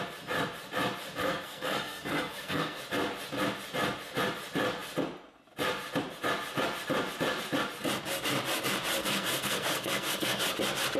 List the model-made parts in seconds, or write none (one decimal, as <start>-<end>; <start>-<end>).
1.2-2.8; 9.0-10.4